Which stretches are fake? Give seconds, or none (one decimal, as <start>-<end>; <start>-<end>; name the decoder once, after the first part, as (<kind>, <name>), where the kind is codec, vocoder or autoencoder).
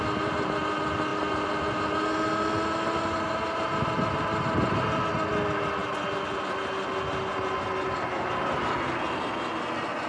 none